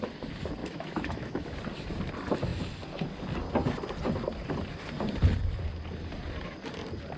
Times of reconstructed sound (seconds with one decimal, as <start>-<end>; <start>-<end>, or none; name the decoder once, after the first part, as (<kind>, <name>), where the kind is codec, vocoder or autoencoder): 0.6-1.5 (autoencoder, DAC-VAE)